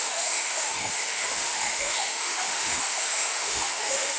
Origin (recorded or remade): remade